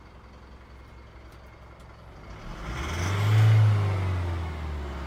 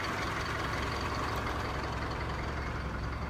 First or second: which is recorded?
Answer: first